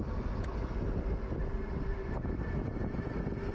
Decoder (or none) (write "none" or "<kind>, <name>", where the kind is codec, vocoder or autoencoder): none